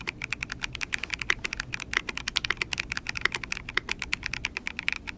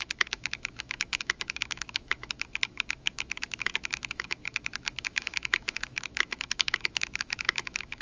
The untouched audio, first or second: first